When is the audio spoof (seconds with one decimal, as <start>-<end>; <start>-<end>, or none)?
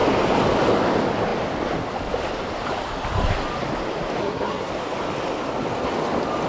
4.2-4.7